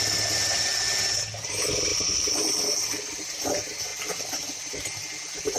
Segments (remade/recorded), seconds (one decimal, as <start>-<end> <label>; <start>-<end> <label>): 0.0-1.9 recorded; 1.9-2.8 remade; 2.8-5.6 recorded